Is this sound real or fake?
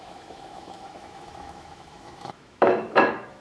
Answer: fake